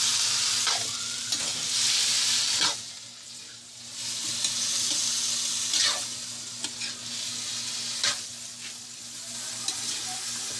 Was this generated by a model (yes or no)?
no